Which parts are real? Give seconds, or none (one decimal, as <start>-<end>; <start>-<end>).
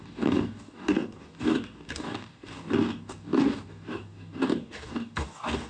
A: none